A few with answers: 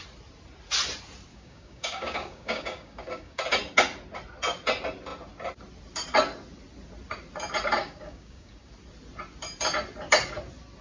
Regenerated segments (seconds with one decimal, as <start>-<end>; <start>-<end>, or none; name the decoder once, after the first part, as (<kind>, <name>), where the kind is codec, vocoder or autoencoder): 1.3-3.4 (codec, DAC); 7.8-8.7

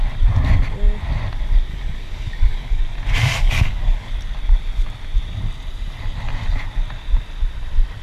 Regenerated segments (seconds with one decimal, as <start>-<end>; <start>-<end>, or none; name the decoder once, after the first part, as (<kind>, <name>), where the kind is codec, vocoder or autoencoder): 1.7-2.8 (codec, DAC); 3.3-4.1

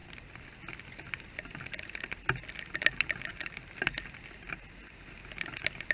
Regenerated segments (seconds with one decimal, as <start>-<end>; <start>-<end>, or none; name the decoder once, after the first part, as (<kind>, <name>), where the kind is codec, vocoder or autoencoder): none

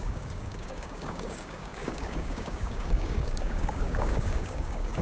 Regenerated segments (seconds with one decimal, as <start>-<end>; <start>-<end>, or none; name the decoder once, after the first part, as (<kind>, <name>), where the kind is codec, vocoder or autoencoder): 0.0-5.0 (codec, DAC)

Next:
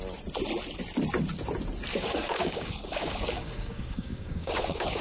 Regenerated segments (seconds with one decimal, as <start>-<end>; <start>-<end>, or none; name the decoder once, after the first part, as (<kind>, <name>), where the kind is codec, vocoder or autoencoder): 1.9-5.0 (codec, DAC)

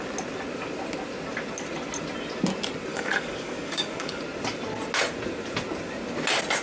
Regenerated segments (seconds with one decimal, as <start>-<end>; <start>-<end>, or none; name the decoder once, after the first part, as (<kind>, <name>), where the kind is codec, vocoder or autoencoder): 2.9-4.2 (codec, DAC)

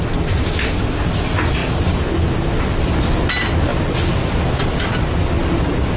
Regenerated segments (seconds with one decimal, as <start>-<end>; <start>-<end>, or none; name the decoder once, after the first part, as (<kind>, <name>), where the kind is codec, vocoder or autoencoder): none

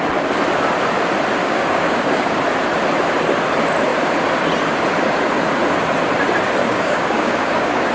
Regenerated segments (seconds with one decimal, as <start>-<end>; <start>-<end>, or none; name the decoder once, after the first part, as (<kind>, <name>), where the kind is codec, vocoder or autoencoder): 1.4-2.4 (codec, DAC); 6.6-7.9